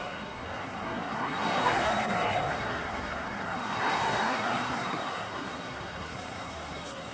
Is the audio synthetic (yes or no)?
yes